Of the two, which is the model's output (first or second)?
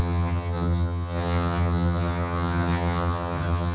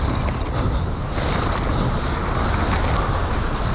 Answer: first